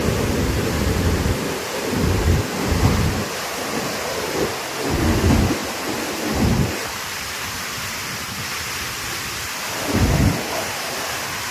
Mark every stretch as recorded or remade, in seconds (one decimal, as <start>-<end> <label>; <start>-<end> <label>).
0.0-6.8 recorded; 6.8-7.7 remade; 7.7-11.5 recorded